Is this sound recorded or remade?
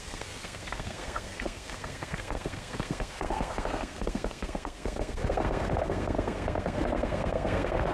remade